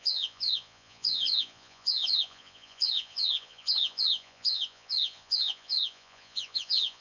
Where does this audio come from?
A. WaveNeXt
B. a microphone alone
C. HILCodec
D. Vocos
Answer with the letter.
D